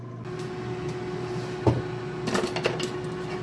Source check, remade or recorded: recorded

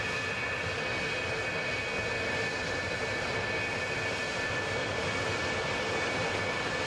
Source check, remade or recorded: recorded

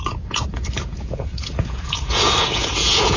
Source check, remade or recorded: remade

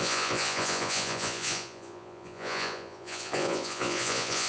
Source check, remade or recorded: remade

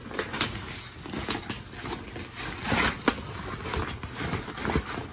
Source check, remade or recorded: recorded